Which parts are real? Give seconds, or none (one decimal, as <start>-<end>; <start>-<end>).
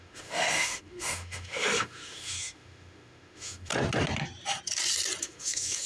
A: 3.7-5.2